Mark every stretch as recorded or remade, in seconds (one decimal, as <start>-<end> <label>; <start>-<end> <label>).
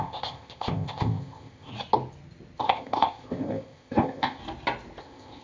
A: 0.0-1.7 remade; 1.7-2.6 recorded; 2.6-4.4 remade; 4.4-5.0 recorded; 5.0-5.4 remade